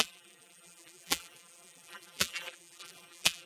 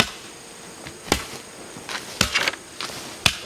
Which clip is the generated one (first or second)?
first